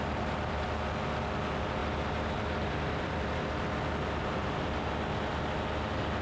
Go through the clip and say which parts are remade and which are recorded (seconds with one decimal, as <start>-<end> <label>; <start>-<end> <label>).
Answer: 0.0-1.8 recorded; 1.8-3.4 remade; 3.4-4.4 recorded; 4.4-4.9 remade; 4.9-6.2 recorded